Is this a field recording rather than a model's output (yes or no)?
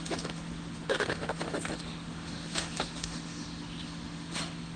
no